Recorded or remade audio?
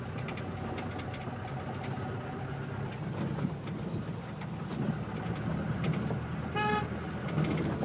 recorded